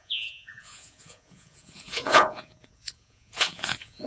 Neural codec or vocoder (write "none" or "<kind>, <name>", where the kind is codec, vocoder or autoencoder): vocoder, Vocos